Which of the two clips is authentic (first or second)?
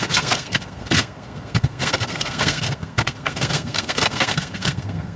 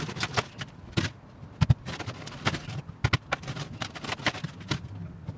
second